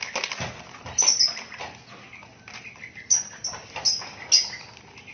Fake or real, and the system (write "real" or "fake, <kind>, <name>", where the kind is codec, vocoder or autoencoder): real